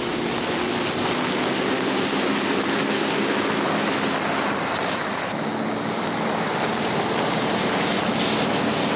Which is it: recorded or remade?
recorded